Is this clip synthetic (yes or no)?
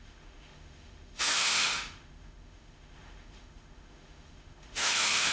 yes